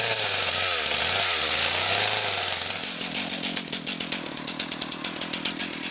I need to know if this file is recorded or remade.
recorded